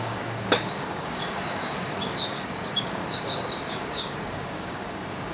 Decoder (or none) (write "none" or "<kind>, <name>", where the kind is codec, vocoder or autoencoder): codec, DAC